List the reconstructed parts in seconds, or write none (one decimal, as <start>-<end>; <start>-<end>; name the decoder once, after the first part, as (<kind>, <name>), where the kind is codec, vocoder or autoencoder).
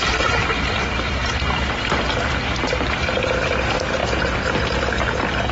0.0-4.0 (vocoder, BigVGAN v2)